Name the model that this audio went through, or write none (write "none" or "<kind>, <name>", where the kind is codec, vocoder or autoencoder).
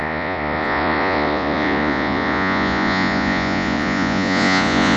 vocoder, Vocos